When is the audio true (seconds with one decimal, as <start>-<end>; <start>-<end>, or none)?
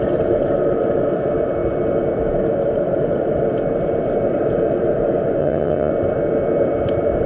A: 0.0-5.4; 5.9-7.3